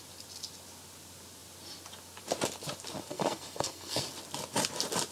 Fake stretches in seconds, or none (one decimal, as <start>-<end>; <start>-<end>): 3.1-4.1

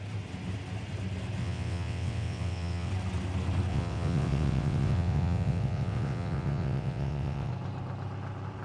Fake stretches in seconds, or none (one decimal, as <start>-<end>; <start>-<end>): 1.4-2.9; 3.7-7.5

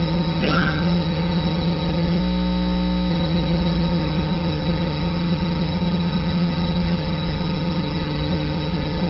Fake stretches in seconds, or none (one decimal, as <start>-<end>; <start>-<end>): 0.0-2.2; 3.1-9.1

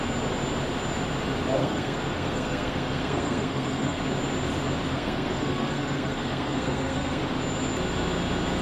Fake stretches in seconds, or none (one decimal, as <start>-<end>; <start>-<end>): 1.6-4.0; 4.9-7.2

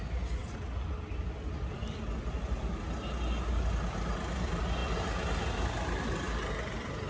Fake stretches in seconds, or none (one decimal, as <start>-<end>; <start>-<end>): none

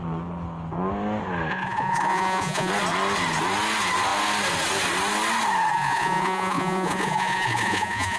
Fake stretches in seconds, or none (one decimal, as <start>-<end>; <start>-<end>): 1.5-2.7; 5.7-8.2

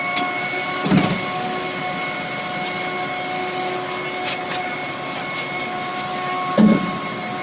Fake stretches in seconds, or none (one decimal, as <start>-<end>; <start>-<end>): none

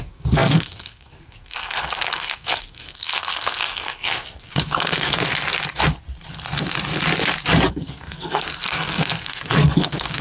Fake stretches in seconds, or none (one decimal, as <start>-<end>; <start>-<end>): 0.0-5.2; 7.7-10.2